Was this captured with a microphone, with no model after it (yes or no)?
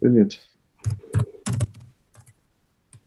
yes